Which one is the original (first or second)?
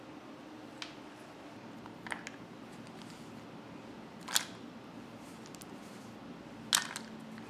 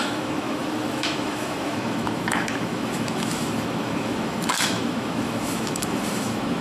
first